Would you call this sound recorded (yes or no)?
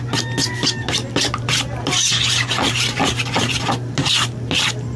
yes